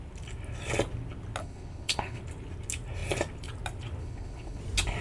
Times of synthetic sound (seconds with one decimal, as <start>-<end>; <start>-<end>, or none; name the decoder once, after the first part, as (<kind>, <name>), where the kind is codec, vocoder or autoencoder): 1.4-2.2 (codec, HILCodec); 4.0-4.6